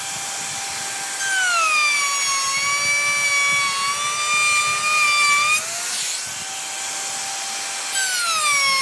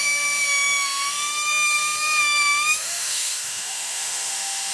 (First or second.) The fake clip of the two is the second